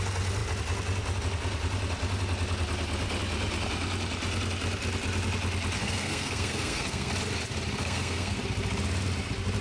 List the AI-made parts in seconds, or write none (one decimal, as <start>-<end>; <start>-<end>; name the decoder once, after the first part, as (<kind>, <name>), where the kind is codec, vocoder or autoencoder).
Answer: 5.8-7.1 (codec, SNAC); 7.8-8.4